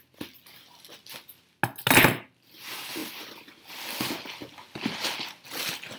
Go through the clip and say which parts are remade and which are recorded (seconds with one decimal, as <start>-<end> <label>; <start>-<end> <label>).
0.0-6.0 recorded